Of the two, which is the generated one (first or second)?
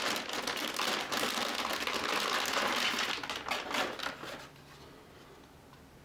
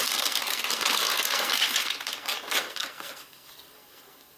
second